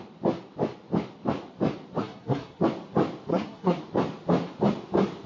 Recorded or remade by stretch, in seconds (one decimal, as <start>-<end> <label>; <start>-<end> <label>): 0.0-2.0 recorded; 2.0-2.6 remade; 2.6-3.3 recorded; 3.3-3.8 remade; 3.8-5.3 recorded